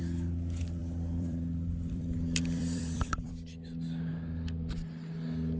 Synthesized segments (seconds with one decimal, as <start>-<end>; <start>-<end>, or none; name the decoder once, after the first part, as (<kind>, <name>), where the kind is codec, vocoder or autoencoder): 0.8-3.3 (vocoder, BigVGAN v2)